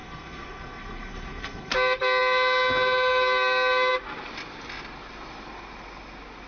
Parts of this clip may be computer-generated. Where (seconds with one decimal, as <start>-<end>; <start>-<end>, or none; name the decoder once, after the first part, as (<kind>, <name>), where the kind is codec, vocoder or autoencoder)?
0.0-1.7 (codec, HILCodec)